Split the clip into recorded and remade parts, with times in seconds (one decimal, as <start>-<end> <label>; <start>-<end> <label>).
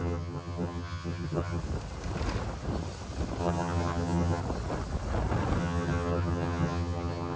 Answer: 0.0-1.6 remade; 1.6-3.4 recorded; 3.4-4.4 remade; 4.4-5.6 recorded; 5.6-7.4 remade